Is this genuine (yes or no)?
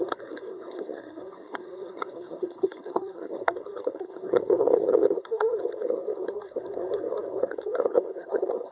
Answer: no